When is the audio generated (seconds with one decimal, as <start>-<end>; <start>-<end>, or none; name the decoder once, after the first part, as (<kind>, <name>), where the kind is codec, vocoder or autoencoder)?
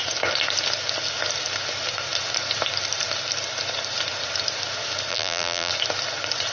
5.1-5.7 (vocoder, BigVGAN v2)